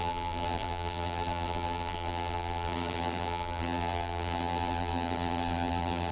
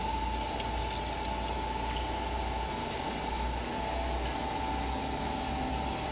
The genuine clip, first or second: second